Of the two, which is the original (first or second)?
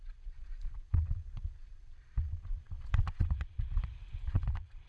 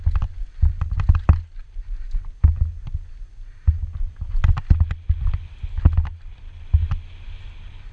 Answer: second